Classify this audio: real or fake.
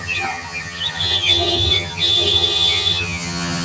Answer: fake